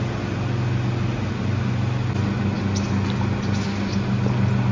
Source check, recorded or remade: recorded